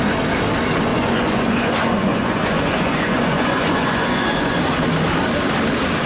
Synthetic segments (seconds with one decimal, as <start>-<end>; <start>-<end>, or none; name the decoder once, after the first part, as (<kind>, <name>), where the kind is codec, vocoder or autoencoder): 0.9-4.6 (vocoder, Vocos)